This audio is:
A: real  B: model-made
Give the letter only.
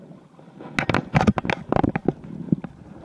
A